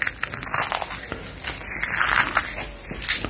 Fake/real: real